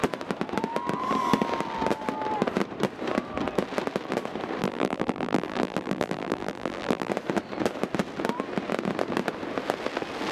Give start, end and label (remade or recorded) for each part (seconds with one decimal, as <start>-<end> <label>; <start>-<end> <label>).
0.0-4.6 recorded; 4.6-7.1 remade; 7.1-10.3 recorded